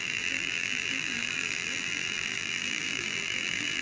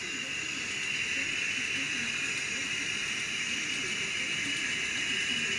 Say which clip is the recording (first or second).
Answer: second